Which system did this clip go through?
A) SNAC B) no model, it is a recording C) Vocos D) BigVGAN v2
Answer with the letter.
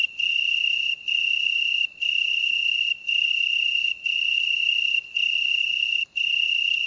C